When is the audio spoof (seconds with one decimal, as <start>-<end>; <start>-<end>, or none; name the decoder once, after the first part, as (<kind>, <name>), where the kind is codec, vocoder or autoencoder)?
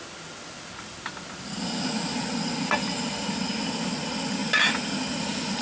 4.4-5.0 (vocoder, BigVGAN v2)